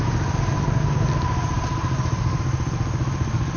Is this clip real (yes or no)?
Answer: yes